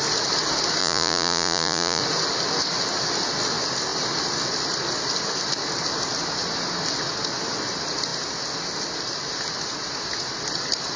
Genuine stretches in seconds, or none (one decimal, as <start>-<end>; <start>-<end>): 0.0-0.8; 2.0-11.0